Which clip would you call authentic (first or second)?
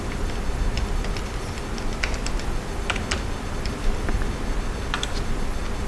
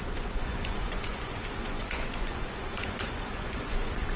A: first